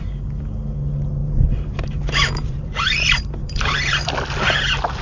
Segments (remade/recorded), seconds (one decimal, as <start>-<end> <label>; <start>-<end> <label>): 0.0-1.2 recorded; 1.2-4.1 remade; 4.1-5.0 recorded